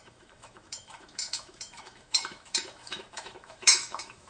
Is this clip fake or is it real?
fake